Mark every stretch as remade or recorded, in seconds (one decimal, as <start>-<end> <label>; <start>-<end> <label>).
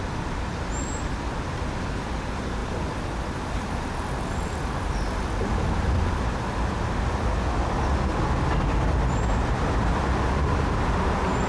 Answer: 0.0-11.5 recorded